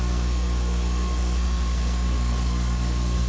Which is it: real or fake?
fake